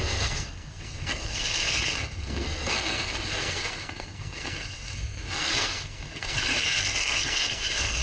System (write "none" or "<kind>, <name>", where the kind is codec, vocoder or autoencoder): codec, SNAC